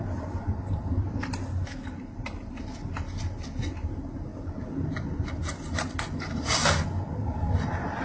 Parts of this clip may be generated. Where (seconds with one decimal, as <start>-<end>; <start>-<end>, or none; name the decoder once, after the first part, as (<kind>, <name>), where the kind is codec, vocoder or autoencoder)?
none